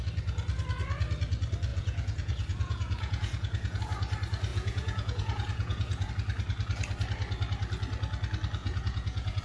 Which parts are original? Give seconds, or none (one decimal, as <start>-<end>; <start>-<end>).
0.0-1.7; 3.8-4.5; 6.1-8.6